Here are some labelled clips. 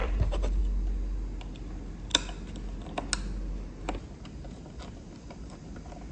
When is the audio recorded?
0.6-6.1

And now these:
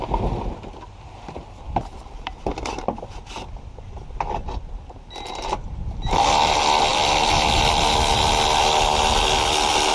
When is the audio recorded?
0.0-9.9

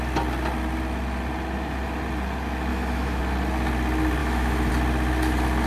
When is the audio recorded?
0.0-2.7; 3.2-4.2; 4.7-5.7

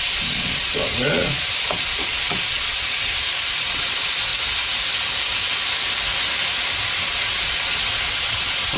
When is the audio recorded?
4.3-6.9

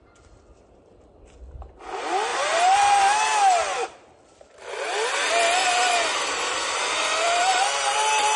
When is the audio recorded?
0.0-2.3; 2.9-5.6; 6.8-8.4

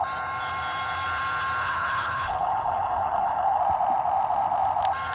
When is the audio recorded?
0.0-1.6; 3.6-5.1

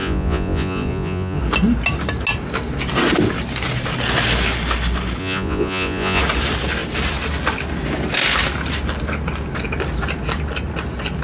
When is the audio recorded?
1.4-5.2; 6.2-11.2